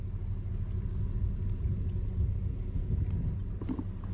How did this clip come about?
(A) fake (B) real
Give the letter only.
B